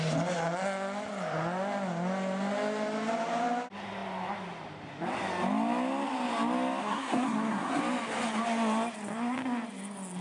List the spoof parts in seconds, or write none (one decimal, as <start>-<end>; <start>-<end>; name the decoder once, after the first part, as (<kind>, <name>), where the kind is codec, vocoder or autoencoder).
6.8-7.8 (codec, SNAC)